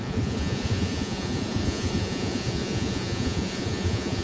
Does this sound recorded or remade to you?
remade